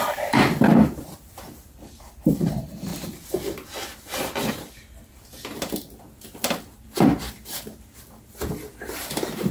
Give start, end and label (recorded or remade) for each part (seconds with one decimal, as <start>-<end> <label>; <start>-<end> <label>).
0.0-2.9 remade; 2.9-5.1 recorded; 5.1-9.5 remade